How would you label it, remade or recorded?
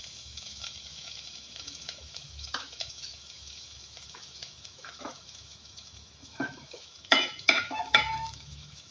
remade